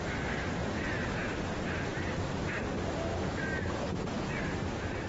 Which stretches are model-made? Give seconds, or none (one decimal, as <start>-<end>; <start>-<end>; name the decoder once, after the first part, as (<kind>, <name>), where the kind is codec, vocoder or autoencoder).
0.6-1.3 (vocoder, Vocos); 3.1-4.3